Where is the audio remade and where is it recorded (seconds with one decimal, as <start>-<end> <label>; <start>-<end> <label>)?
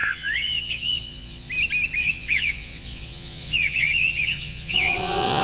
0.0-1.5 remade; 1.5-2.0 recorded; 2.0-5.4 remade